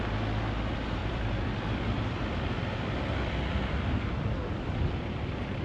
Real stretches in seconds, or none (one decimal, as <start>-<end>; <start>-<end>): 0.0-1.0; 4.0-5.6